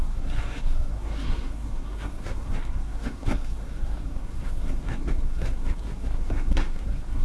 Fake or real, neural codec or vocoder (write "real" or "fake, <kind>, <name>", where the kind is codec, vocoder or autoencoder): fake, codec, SNAC